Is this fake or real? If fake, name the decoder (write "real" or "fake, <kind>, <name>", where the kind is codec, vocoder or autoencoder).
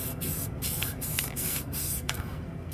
fake, codec, SNAC